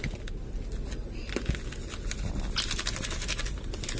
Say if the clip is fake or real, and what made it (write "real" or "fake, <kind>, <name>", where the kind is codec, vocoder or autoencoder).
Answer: real